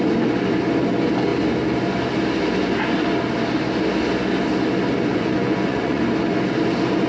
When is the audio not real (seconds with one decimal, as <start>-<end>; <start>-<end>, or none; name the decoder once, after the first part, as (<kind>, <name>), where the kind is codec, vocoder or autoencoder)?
5.1-6.0 (vocoder, Vocos)